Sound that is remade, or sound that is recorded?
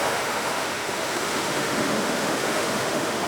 remade